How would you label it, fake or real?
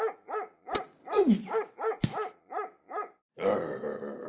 real